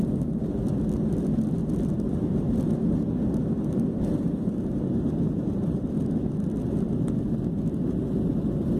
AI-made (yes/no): no